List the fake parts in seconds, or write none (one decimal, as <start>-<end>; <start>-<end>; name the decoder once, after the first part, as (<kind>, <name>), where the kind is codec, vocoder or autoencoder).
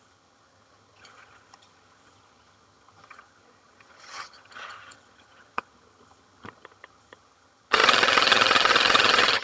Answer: 0.0-9.4 (vocoder, HiFi-GAN)